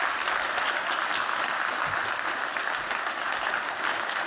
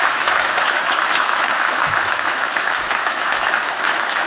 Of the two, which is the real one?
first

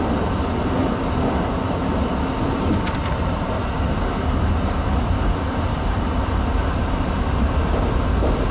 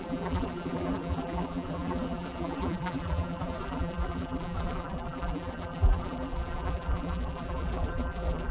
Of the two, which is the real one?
first